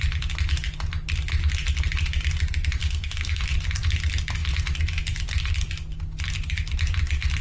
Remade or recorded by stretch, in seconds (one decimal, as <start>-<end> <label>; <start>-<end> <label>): 0.0-2.8 recorded; 2.8-3.4 remade; 3.4-7.4 recorded